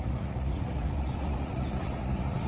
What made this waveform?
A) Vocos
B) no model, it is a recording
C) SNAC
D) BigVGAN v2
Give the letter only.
A